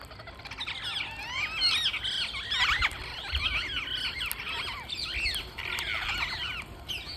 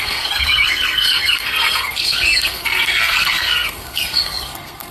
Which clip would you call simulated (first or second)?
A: second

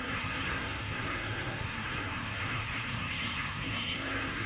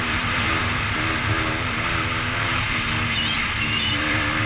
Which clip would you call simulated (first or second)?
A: first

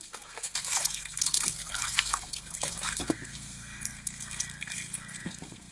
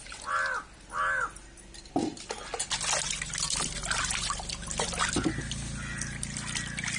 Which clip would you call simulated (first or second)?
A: first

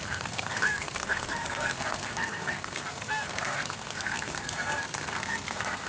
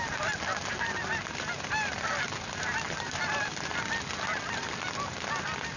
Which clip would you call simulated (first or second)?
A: first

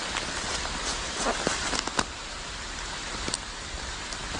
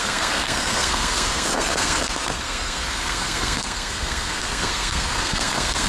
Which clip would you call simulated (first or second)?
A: second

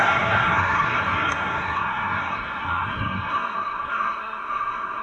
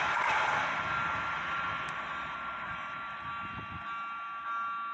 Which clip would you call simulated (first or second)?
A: first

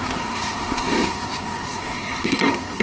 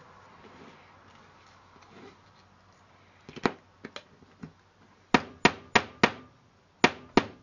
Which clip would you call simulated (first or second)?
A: first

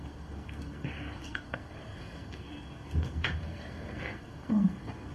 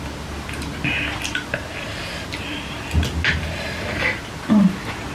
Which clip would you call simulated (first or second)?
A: first